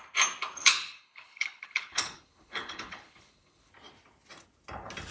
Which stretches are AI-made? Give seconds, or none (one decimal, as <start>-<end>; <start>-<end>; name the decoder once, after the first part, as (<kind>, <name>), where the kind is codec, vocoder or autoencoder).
0.6-3.7 (codec, HILCodec)